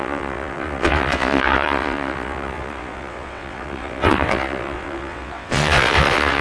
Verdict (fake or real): fake